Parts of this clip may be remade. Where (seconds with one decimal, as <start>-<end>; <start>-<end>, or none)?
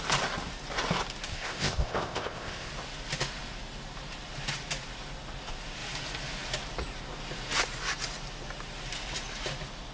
1.3-2.7